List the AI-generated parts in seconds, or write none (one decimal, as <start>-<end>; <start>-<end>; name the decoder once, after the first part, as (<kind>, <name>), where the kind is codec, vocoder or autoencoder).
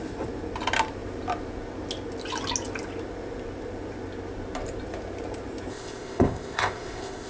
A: 5.7-7.3 (codec, ZipCodec)